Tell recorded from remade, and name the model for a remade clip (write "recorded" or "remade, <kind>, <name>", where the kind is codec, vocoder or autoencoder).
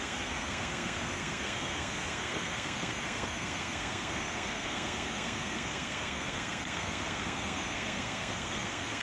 remade, codec, SNAC